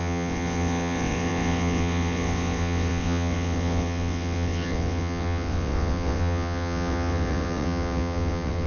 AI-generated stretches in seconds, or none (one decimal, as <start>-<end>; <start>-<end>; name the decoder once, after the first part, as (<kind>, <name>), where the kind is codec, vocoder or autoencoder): 0.0-8.7 (vocoder, WaveNeXt)

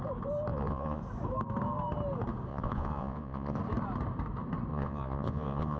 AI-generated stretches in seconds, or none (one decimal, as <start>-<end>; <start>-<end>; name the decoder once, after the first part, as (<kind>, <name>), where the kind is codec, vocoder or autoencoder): 0.5-1.0 (vocoder, Vocos); 2.5-3.6; 4.7-5.8

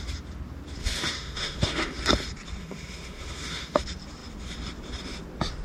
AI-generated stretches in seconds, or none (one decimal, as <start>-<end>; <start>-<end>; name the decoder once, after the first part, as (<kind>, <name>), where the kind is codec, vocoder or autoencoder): 0.8-2.0 (autoencoder, DAC-VAE); 2.6-3.8